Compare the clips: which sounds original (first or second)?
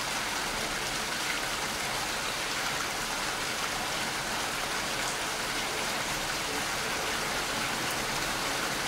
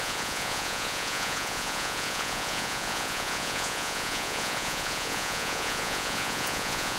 first